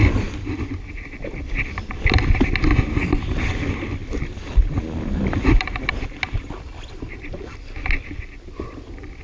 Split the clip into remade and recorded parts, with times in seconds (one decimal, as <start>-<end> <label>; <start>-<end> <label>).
0.0-0.6 remade; 0.6-4.0 recorded; 4.0-5.9 remade; 5.9-9.2 recorded